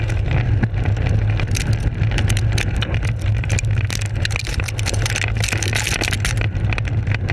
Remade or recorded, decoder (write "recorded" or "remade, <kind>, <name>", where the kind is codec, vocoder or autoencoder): recorded